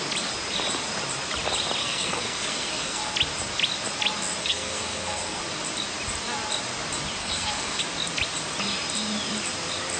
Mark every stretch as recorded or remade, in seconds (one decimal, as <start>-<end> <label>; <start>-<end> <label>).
0.0-1.8 recorded; 1.8-3.1 remade; 3.1-4.4 recorded; 4.4-5.4 remade; 5.4-7.2 recorded; 7.2-7.8 remade; 7.8-10.0 recorded